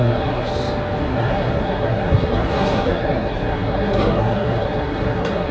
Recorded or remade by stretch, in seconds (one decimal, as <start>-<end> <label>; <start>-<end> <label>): 0.0-0.5 remade; 0.5-1.0 recorded; 1.0-5.5 remade

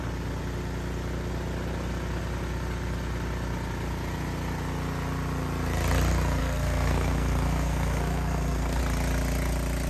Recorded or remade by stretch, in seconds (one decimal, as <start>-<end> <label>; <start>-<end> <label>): 0.0-6.4 recorded; 6.4-8.8 remade; 8.8-9.9 recorded

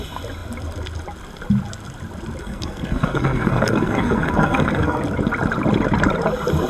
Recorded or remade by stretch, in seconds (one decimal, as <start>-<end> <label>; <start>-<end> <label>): 0.0-2.4 recorded; 2.4-5.0 remade; 5.0-6.7 recorded